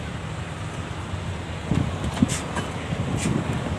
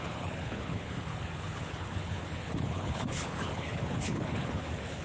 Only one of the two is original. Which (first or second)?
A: first